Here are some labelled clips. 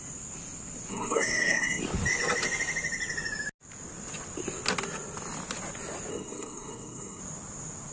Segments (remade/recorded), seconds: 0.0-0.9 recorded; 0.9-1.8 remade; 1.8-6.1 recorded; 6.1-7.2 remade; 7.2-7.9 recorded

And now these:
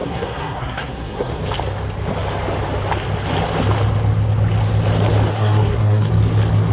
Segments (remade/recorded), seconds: 0.0-1.4 remade; 1.4-5.3 recorded; 5.3-6.1 remade; 6.1-6.7 recorded

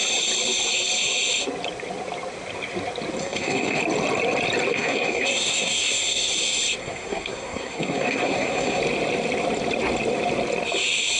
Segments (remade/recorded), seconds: 0.0-3.2 recorded; 3.2-3.8 remade; 3.8-4.7 recorded; 4.7-6.3 remade; 6.3-6.8 recorded; 6.8-8.8 remade; 8.8-11.2 recorded